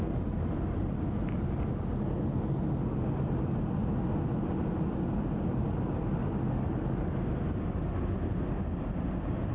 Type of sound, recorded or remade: recorded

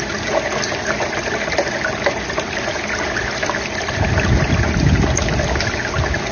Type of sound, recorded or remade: recorded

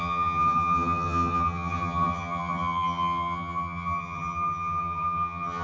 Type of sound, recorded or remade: remade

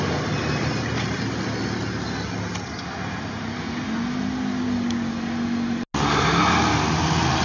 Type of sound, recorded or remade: recorded